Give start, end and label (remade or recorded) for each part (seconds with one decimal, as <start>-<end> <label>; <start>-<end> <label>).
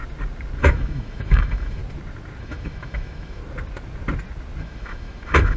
0.0-0.6 recorded; 0.6-1.8 remade; 1.8-2.4 recorded; 2.4-3.4 remade; 3.4-4.6 recorded; 4.6-5.6 remade